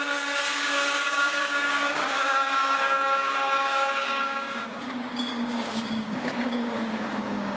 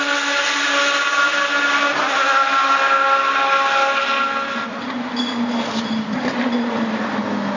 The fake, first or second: first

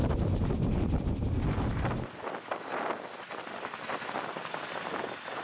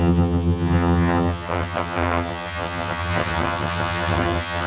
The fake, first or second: second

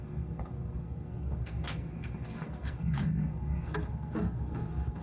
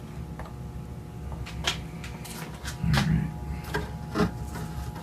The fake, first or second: first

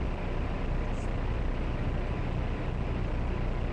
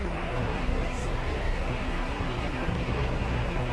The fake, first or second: second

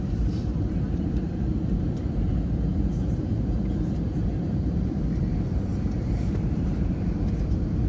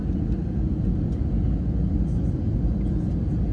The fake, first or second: first